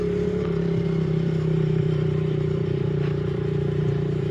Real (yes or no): no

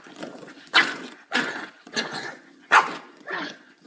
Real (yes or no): no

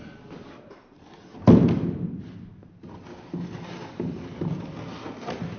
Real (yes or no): yes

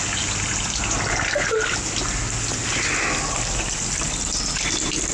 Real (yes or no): yes